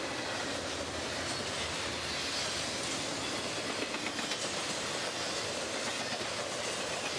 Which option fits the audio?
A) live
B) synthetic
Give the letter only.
A